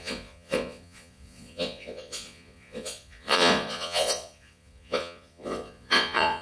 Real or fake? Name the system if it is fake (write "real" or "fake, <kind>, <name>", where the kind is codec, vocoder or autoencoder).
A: fake, vocoder, Vocos